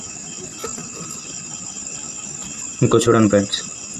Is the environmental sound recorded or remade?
recorded